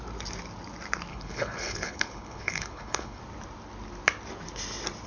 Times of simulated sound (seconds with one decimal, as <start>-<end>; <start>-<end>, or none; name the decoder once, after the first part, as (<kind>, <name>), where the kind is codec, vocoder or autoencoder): 1.1-3.2 (codec, HILCodec)